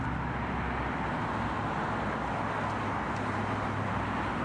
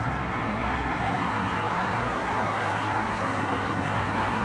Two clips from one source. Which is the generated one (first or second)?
second